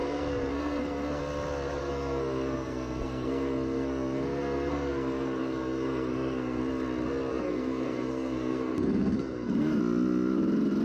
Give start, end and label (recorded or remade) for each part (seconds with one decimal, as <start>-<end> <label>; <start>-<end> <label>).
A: 0.0-1.2 remade; 1.2-1.8 recorded; 1.8-6.6 remade; 6.6-7.3 recorded; 7.3-9.8 remade; 9.8-10.8 recorded